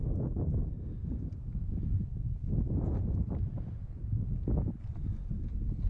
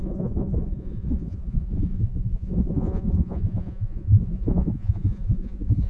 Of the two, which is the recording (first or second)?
first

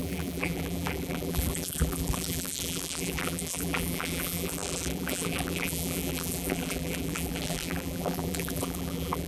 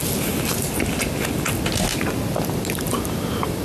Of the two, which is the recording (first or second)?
second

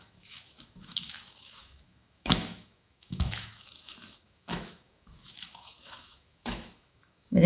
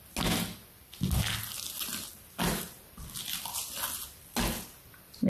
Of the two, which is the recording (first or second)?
second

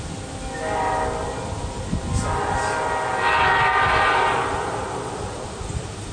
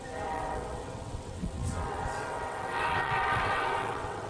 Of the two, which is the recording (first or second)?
first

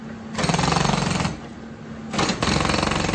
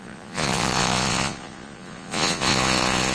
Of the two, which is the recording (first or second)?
first